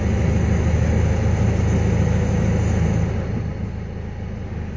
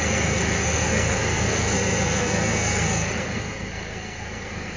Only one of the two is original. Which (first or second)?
first